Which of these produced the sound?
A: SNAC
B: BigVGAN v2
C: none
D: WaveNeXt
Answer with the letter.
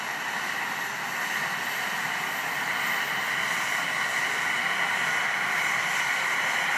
C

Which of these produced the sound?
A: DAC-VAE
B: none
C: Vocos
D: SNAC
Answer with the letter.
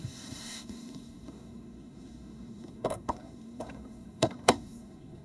D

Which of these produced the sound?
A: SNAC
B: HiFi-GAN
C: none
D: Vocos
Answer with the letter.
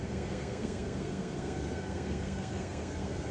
A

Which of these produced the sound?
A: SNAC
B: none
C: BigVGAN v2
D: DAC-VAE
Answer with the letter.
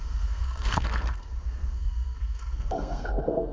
A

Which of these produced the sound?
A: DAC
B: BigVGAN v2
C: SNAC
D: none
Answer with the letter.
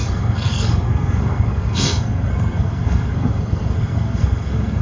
C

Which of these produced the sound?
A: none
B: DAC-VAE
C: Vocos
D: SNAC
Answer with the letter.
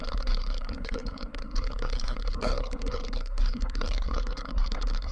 D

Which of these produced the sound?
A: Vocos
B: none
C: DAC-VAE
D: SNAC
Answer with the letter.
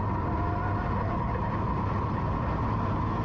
B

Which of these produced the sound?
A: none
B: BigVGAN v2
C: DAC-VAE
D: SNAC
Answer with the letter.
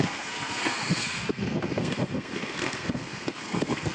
D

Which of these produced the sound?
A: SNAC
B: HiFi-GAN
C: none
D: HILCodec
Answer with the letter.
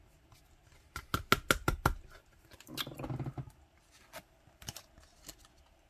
C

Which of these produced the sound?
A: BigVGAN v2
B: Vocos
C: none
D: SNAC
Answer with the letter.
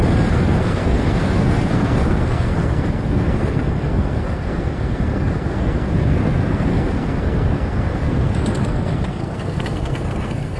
D